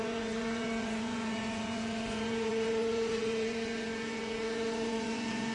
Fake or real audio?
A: fake